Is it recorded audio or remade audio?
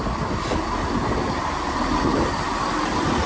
recorded